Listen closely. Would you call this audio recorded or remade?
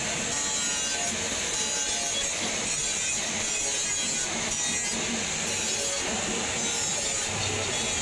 recorded